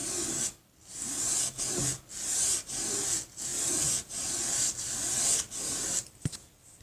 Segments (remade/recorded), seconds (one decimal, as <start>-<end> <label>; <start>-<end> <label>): 0.0-6.8 recorded